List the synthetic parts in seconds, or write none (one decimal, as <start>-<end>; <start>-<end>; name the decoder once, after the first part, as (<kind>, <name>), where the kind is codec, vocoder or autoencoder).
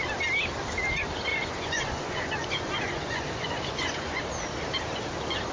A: 1.3-4.2 (vocoder, Vocos)